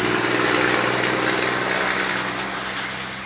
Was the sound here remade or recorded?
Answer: recorded